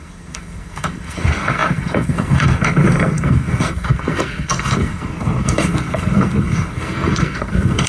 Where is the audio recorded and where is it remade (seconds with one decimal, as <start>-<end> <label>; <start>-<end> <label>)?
0.0-7.9 remade